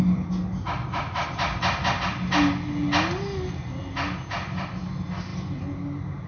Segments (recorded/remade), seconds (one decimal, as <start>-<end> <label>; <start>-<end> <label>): 0.0-6.3 recorded